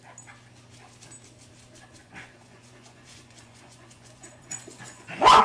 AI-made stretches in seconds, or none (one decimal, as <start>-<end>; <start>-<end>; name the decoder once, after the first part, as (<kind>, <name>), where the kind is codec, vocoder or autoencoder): 2.0-5.4 (vocoder, Vocos)